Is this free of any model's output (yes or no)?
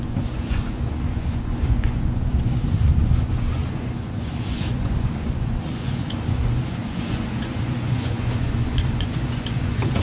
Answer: no